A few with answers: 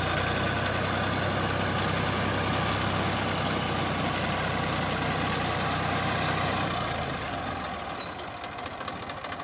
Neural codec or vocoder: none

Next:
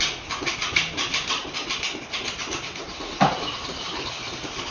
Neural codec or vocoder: none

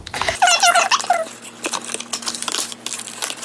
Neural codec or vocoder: none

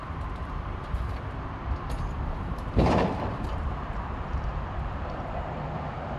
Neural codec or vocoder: vocoder, BigVGAN v2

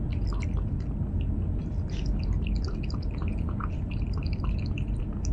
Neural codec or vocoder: none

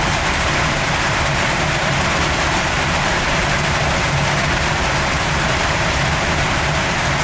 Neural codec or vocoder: vocoder, BigVGAN v2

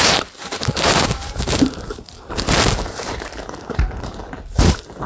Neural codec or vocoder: vocoder, BigVGAN v2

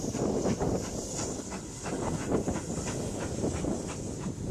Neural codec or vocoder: none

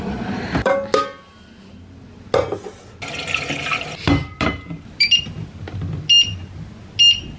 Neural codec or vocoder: none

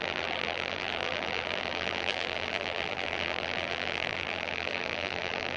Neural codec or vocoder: vocoder, BigVGAN v2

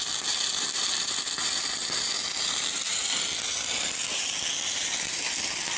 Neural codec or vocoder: vocoder, BigVGAN v2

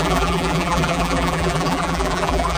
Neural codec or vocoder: vocoder, BigVGAN v2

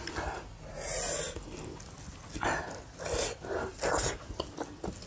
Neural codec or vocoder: none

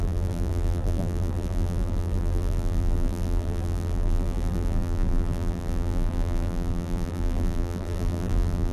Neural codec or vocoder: vocoder, BigVGAN v2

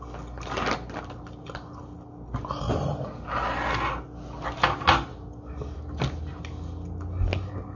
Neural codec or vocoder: none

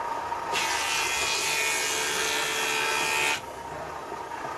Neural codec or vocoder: none